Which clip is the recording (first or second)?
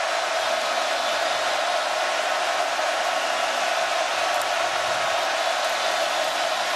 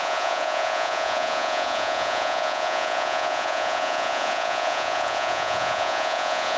first